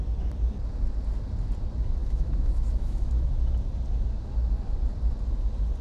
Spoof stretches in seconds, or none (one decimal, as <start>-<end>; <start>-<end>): 2.0-3.3